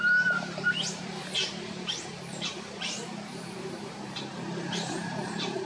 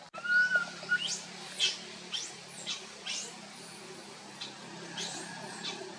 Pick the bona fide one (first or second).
second